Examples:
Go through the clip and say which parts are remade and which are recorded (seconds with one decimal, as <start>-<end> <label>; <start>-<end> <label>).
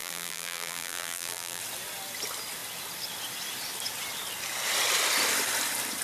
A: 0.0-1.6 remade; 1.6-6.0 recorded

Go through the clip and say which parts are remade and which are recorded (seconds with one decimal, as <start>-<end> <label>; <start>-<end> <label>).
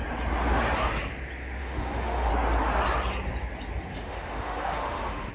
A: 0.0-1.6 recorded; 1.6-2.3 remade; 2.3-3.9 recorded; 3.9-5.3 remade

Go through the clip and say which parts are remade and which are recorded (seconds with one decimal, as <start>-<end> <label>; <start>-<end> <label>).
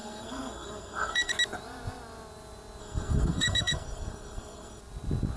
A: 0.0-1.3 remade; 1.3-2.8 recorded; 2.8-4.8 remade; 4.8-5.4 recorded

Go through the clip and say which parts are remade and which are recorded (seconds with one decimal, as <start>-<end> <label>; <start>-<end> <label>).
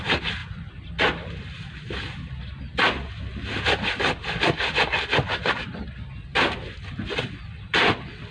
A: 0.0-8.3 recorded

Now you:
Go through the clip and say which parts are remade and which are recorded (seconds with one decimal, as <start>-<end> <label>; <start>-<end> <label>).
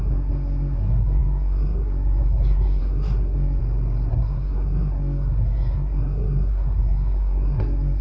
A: 0.0-3.6 remade; 3.6-4.1 recorded; 4.1-8.0 remade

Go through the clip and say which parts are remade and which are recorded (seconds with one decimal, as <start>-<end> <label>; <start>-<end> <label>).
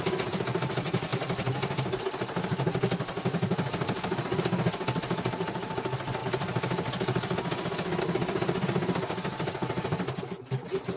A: 0.0-11.0 recorded